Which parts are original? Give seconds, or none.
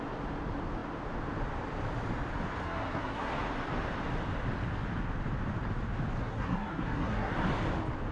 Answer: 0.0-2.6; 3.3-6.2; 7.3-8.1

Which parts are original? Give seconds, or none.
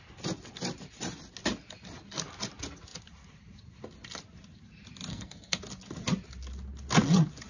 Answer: 0.0-5.1; 5.6-7.5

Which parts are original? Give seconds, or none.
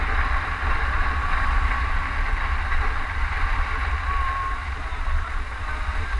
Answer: 0.0-1.2; 1.9-4.6; 5.7-6.2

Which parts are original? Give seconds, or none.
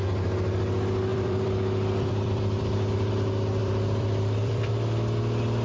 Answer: 0.0-1.1; 3.1-3.6; 4.7-5.6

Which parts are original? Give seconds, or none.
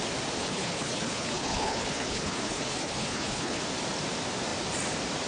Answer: 0.0-0.4; 3.6-5.3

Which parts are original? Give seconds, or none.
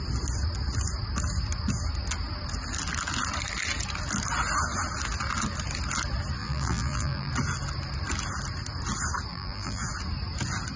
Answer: 0.0-6.4; 7.3-9.3; 9.9-10.8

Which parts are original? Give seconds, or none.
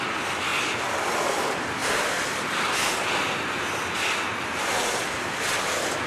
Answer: 0.0-6.1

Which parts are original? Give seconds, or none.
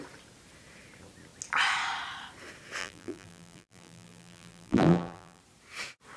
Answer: 0.0-2.8; 5.4-6.2